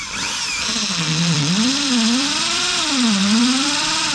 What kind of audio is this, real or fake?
fake